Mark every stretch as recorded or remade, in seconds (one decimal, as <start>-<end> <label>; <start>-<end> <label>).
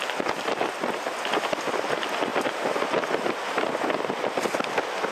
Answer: 0.0-5.1 recorded